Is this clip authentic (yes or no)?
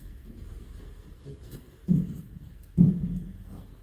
no